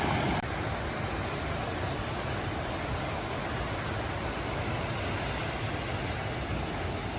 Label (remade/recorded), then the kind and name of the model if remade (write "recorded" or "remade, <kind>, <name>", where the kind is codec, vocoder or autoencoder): recorded